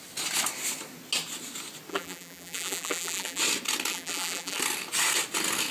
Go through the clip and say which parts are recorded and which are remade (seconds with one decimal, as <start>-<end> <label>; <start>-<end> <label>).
0.0-1.9 recorded; 1.9-3.4 remade; 3.4-3.9 recorded; 3.9-4.6 remade; 4.6-5.7 recorded